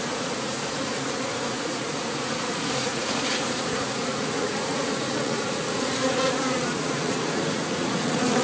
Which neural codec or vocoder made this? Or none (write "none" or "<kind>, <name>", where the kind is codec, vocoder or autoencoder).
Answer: vocoder, Vocos